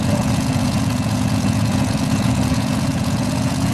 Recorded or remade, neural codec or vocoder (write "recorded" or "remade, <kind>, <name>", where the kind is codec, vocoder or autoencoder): remade, vocoder, Vocos